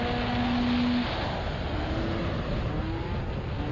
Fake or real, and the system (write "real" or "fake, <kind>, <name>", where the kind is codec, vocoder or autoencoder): real